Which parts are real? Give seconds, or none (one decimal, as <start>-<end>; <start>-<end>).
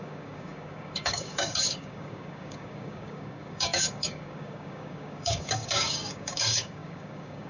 none